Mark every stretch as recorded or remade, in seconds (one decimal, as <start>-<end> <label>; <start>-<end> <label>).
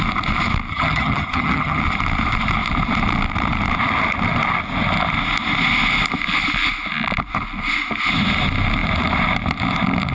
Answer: 0.0-0.7 recorded; 0.7-1.8 remade; 1.8-10.1 recorded